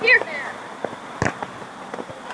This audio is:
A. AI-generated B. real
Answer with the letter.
B